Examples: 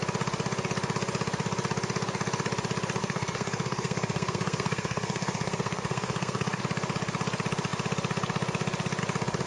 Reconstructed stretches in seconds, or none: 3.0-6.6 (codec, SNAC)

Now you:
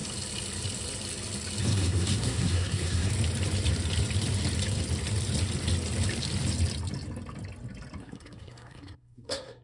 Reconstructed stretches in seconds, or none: 1.6-3.1 (codec, SNAC); 8.0-9.6